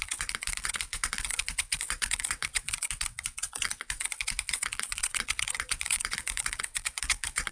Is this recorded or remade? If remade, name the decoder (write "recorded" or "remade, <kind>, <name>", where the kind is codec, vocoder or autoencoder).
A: remade, vocoder, WaveNeXt